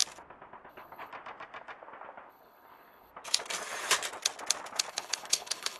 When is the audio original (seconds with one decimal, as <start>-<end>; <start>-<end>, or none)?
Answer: 0.0-0.7; 1.1-2.3; 3.1-4.9